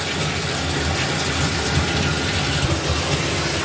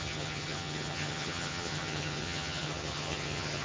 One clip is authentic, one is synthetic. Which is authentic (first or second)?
first